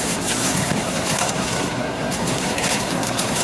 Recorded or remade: remade